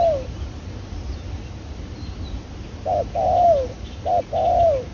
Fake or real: real